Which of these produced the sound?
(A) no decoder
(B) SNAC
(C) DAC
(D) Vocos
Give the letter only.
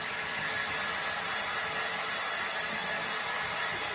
A